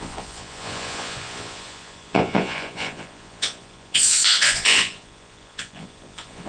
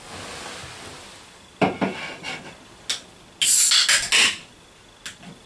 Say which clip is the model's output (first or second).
first